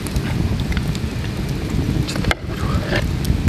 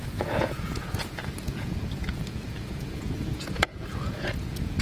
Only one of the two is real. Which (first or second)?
first